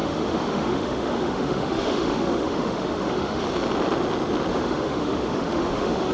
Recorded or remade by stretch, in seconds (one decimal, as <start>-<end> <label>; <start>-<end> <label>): 0.0-3.4 remade; 3.4-4.5 recorded; 4.5-6.1 remade